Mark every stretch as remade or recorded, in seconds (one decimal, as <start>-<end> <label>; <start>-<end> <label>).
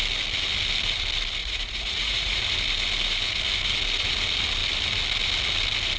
0.0-1.4 recorded; 1.4-2.4 remade; 2.4-6.0 recorded